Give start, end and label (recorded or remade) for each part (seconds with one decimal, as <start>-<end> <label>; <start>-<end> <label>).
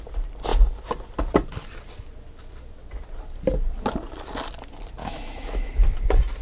0.0-5.0 recorded; 5.0-5.7 remade; 5.7-6.4 recorded